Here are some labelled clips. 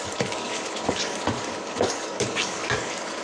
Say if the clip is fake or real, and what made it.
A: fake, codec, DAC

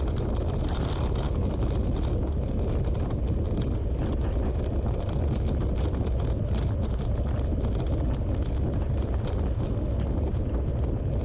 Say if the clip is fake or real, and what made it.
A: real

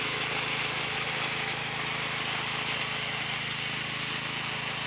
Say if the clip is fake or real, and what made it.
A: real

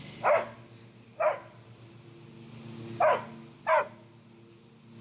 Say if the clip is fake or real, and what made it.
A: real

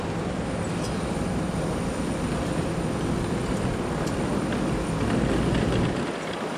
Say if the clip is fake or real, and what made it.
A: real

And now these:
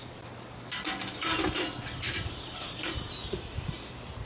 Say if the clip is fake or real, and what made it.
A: real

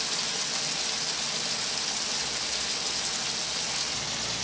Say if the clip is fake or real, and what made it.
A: real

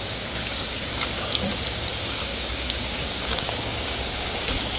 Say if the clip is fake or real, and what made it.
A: fake, codec, DAC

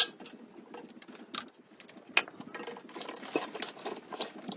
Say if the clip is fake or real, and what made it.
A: real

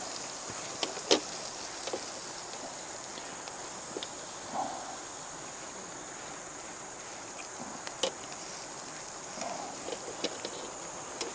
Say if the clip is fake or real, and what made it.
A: real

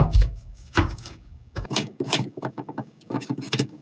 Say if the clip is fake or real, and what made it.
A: fake, codec, DAC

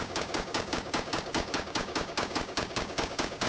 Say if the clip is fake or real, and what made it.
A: fake, codec, DAC